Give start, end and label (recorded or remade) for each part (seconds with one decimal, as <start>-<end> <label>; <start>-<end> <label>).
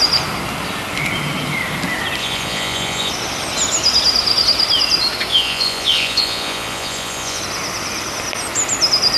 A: 0.0-2.2 recorded; 2.2-3.1 remade; 3.1-5.3 recorded; 5.3-7.4 remade; 7.4-9.2 recorded